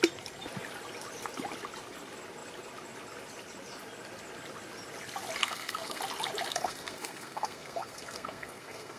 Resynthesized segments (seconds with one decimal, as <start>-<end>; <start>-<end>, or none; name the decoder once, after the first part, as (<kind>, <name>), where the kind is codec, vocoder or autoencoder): 5.4-6.0 (codec, SNAC); 6.5-9.0